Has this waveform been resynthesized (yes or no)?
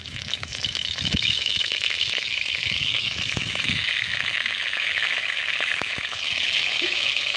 yes